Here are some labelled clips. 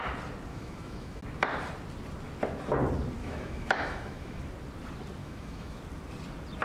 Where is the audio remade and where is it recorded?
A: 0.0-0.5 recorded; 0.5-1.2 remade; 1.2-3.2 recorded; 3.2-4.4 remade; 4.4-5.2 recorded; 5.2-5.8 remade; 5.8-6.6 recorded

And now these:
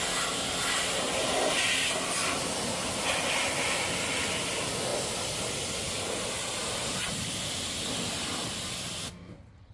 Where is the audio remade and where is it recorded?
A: 0.0-9.7 recorded

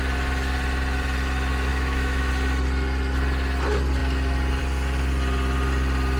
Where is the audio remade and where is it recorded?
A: 0.0-1.7 recorded; 1.7-2.3 remade; 2.3-6.2 recorded